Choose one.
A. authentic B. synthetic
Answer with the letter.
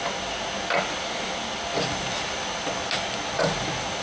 A